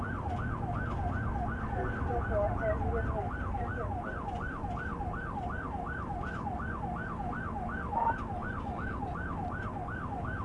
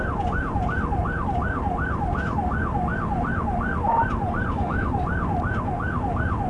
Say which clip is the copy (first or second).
second